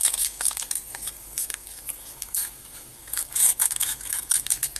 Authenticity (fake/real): fake